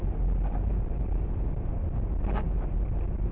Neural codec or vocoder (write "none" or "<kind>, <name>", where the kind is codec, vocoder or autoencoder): none